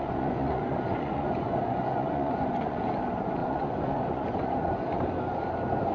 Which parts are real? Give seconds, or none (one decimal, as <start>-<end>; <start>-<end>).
4.9-5.9